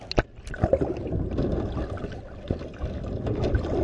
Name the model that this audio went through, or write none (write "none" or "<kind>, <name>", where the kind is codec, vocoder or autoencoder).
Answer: none